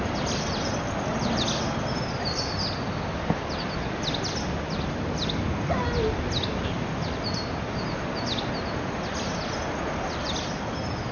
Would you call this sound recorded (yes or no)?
yes